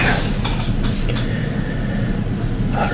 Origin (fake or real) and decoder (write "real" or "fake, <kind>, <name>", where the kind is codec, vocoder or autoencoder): real